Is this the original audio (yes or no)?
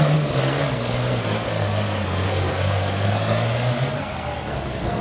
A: no